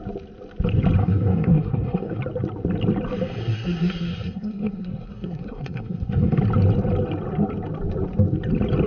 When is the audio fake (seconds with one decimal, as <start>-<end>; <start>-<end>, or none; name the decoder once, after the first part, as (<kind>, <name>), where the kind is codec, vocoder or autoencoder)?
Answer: 1.0-2.2 (codec, SNAC); 3.4-6.4